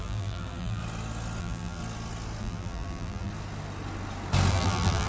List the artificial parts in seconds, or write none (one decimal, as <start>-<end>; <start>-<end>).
0.0-0.8; 1.4-1.8; 2.4-3.3; 4.5-5.1